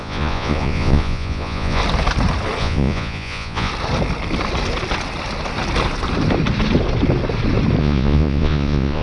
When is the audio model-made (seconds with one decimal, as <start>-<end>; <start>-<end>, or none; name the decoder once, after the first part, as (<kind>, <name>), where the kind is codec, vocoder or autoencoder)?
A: 0.0-1.8 (vocoder, Vocos); 2.6-3.7; 7.8-9.0